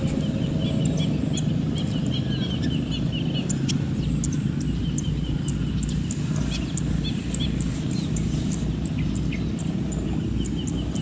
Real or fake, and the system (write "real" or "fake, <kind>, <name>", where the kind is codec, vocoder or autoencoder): real